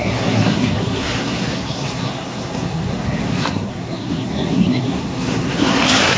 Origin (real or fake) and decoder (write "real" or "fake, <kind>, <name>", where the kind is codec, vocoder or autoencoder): fake, codec, SNAC